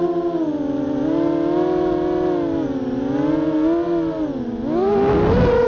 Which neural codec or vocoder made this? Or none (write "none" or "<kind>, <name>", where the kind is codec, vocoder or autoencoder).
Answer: none